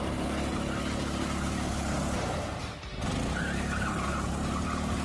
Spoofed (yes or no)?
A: no